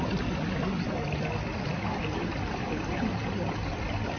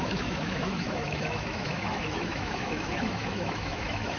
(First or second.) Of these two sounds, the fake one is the second